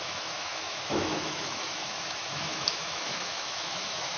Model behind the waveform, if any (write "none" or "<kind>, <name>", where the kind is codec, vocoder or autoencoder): autoencoder, DAC-VAE